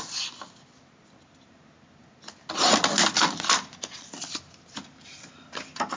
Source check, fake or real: real